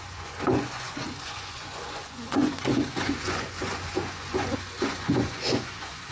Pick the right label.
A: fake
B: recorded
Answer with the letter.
A